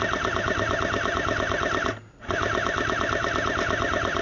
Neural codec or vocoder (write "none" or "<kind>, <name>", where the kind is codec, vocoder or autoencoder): none